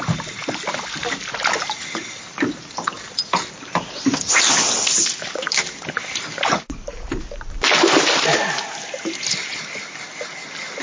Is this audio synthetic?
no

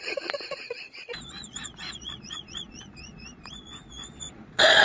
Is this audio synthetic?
yes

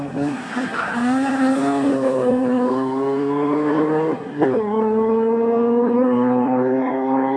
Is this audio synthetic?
yes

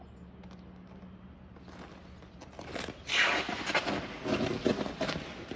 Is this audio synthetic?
no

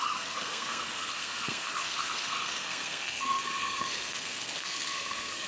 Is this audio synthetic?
yes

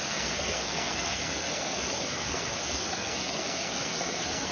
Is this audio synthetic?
yes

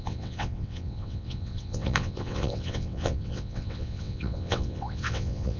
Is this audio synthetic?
yes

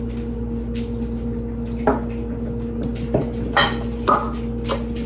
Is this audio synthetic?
no